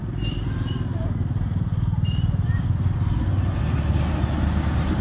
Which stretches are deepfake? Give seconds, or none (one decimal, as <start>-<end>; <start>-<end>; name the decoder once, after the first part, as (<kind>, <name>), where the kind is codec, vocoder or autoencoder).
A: none